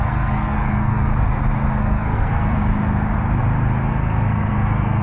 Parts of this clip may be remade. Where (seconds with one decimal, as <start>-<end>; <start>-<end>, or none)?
0.0-1.1; 1.8-2.6; 3.9-5.0